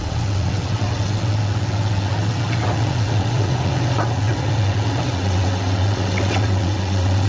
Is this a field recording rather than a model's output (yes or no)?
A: no